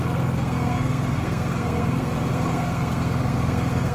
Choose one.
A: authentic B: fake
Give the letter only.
B